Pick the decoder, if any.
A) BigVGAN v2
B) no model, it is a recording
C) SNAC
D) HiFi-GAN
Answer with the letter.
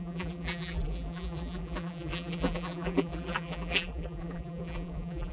A